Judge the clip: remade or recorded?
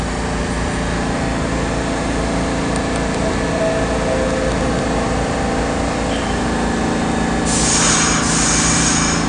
recorded